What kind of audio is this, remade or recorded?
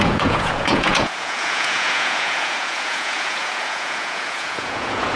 remade